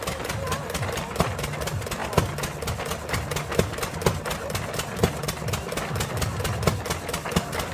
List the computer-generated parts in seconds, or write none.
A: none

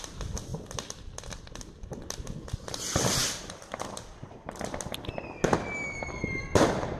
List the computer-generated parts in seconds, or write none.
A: none

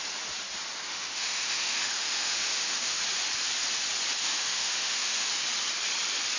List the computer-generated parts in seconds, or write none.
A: 0.9-3.0 (autoencoder, DAC-VAE); 4.2-5.3

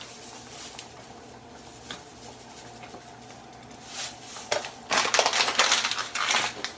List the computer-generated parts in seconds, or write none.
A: none

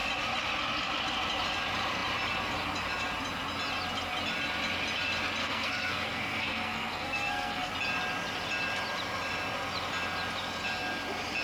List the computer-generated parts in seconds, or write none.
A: 5.4-7.7 (codec, SNAC)

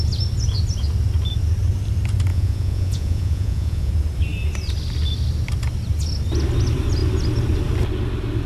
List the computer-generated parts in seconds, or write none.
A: 2.3-3.9 (vocoder, Vocos)

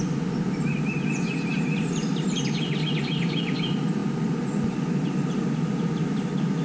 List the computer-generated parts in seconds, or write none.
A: none